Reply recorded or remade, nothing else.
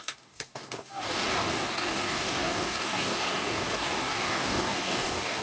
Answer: remade